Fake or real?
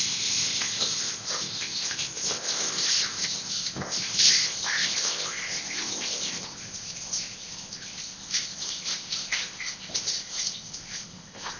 fake